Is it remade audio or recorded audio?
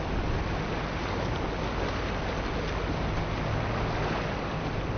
recorded